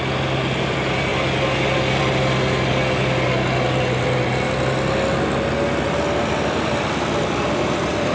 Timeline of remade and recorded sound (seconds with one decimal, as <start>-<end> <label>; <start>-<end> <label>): 0.0-8.1 recorded